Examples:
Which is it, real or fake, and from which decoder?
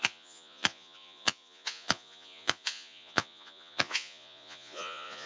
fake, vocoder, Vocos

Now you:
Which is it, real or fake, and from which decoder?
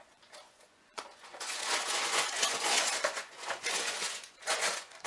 fake, vocoder, Vocos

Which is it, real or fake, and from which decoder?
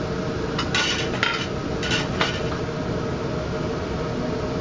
real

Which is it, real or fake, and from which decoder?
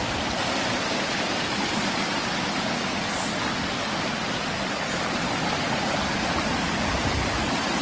real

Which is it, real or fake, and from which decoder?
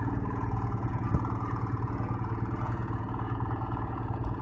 fake, vocoder, Vocos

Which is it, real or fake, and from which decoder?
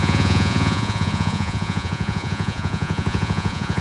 fake, vocoder, Vocos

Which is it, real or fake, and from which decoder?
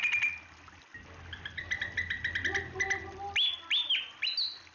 real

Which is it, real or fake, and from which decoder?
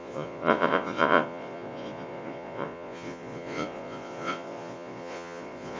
fake, vocoder, Vocos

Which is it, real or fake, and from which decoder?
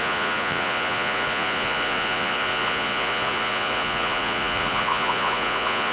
fake, vocoder, Vocos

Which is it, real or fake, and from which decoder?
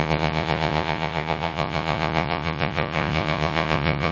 fake, vocoder, Vocos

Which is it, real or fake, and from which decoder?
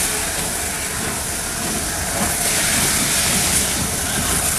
real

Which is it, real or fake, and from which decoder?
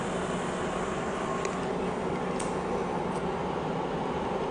real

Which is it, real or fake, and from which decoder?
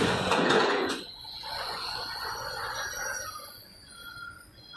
fake, vocoder, Vocos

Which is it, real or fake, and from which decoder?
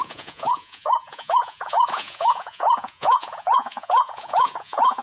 fake, vocoder, Vocos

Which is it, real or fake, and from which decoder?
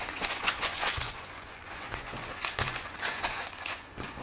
fake, vocoder, Vocos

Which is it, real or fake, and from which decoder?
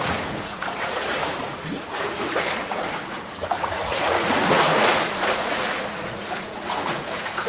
fake, vocoder, Vocos